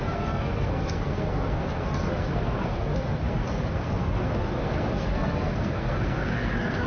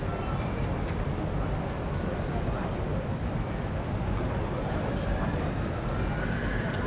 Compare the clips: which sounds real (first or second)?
second